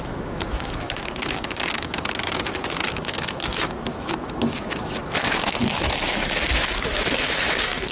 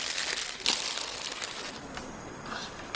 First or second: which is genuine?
second